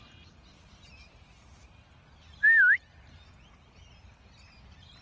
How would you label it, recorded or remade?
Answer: recorded